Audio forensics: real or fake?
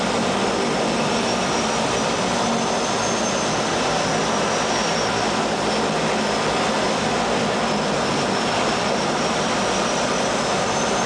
real